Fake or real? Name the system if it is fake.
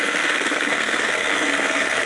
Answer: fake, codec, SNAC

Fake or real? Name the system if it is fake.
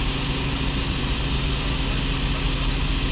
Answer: real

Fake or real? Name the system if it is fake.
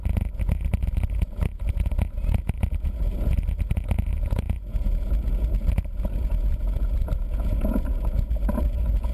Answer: fake, vocoder, Vocos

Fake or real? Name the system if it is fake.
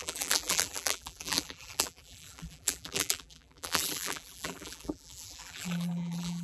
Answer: fake, vocoder, BigVGAN v2